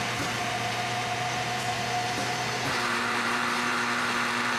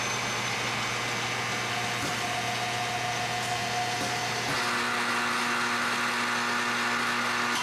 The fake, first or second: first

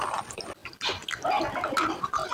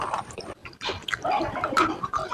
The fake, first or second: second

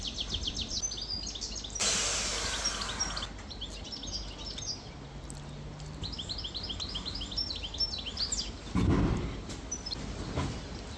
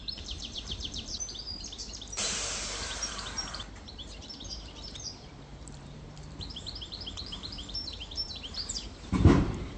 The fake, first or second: second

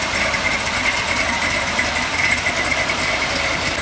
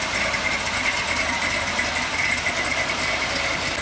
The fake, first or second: first